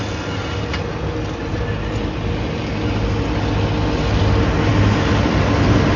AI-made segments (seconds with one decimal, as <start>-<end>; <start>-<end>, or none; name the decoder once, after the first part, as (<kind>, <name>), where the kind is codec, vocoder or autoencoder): none